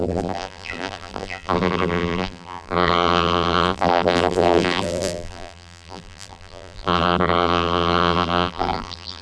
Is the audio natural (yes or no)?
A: no